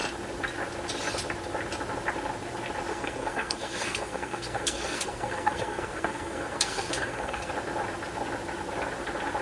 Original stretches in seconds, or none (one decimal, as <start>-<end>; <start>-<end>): 0.0-2.9; 7.5-9.4